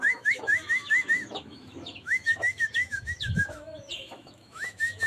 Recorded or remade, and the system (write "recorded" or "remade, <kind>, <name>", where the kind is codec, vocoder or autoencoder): remade, autoencoder, DAC-VAE